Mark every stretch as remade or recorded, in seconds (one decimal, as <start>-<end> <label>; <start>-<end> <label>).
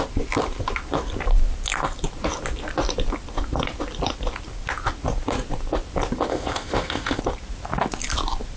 0.0-6.3 recorded; 6.3-7.2 remade; 7.2-8.6 recorded